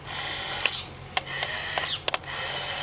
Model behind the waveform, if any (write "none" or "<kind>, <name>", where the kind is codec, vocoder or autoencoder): none